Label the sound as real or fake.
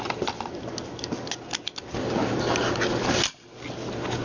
real